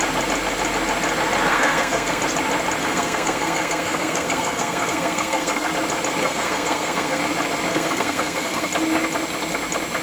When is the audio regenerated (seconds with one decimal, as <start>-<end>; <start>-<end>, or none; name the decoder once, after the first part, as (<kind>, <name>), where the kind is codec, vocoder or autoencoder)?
1.5-2.2 (codec, SNAC); 2.8-5.7; 6.2-7.2; 7.7-8.7